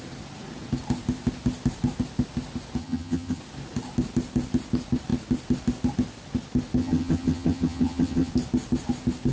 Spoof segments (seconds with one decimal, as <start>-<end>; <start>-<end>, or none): 2.8-3.4; 6.8-8.3